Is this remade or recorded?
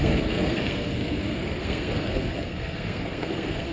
remade